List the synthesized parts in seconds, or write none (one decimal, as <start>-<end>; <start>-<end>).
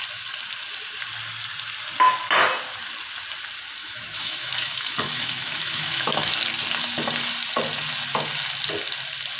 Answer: 3.8-6.3